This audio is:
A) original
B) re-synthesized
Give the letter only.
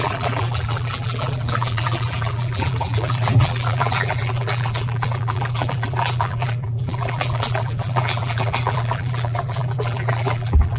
B